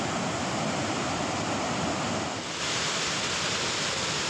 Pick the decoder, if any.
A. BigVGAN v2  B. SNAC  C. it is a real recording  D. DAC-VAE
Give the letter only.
C